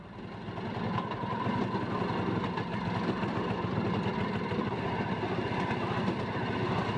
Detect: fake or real real